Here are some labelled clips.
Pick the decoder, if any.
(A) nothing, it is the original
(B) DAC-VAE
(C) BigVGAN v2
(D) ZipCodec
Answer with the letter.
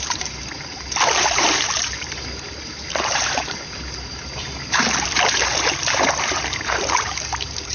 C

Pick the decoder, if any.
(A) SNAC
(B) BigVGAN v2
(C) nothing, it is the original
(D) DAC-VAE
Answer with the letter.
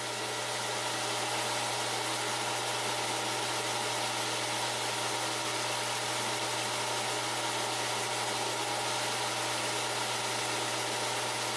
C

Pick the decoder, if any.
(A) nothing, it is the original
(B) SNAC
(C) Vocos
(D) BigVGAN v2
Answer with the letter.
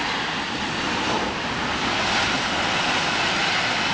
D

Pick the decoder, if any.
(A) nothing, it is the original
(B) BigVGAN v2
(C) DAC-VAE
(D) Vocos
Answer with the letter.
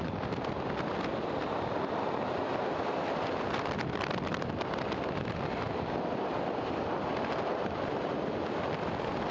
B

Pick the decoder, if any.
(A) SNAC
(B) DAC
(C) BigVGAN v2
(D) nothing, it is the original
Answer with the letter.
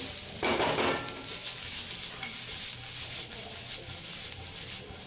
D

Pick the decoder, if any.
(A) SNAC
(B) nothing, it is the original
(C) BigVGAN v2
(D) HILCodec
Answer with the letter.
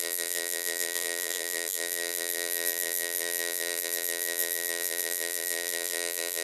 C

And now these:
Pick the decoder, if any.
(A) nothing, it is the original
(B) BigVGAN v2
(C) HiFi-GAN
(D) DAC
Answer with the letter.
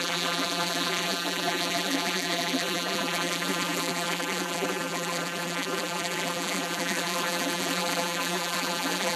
B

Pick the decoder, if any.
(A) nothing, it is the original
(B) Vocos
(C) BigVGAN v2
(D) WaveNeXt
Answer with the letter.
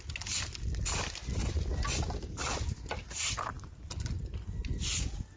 A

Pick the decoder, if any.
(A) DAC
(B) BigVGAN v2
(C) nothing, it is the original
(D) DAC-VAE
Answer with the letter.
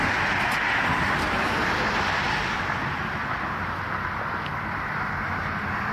B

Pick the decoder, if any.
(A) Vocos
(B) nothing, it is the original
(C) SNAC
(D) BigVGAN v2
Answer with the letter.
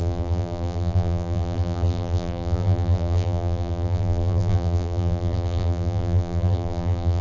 D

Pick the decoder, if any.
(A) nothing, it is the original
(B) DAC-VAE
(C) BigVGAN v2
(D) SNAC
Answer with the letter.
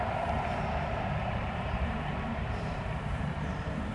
C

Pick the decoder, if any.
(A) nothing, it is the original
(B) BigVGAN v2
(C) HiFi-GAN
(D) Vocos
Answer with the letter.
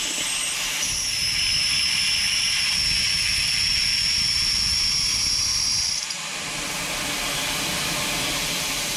A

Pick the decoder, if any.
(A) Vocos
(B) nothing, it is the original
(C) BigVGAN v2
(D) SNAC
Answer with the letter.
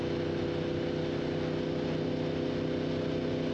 B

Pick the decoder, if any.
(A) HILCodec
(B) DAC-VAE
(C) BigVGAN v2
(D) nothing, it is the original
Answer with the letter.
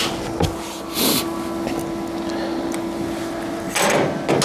D